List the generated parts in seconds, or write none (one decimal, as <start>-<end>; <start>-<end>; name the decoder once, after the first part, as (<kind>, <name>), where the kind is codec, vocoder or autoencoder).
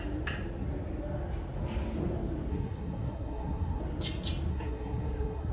2.5-3.8 (codec, SNAC); 4.5-5.5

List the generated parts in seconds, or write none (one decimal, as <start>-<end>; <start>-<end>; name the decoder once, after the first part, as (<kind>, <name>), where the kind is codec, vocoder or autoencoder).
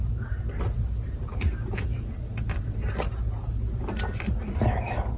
none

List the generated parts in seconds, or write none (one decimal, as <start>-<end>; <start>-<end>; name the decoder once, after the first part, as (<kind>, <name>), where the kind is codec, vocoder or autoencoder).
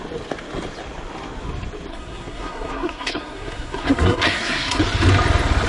1.9-4.8 (codec, SNAC)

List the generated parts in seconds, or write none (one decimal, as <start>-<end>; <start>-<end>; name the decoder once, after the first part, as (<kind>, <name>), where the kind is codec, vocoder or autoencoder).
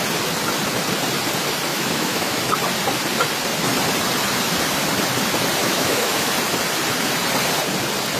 1.7-2.4 (autoencoder, DAC-VAE); 5.6-6.3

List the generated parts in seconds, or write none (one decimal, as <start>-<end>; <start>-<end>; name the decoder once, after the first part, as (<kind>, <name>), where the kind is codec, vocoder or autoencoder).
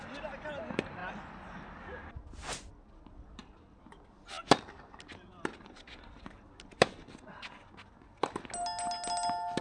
none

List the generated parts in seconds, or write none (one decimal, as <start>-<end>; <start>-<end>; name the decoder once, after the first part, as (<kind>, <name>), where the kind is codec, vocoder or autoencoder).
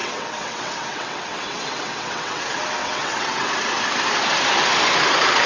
0.0-2.4 (vocoder, WaveNeXt); 2.8-3.5